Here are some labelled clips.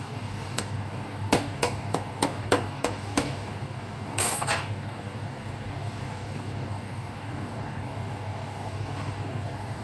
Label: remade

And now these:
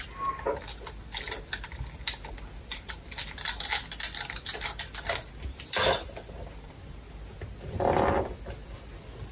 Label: recorded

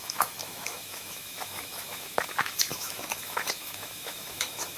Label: remade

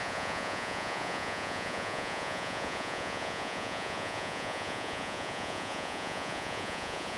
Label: remade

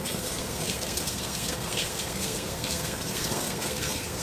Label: remade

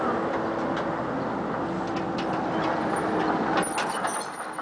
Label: recorded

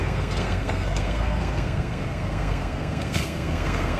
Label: remade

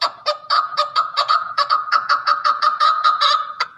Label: remade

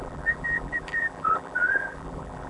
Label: remade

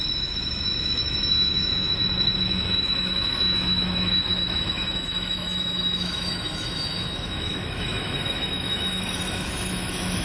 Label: remade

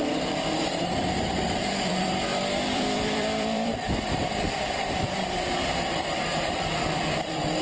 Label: remade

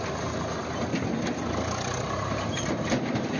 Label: recorded